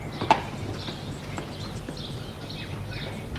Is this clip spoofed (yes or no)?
no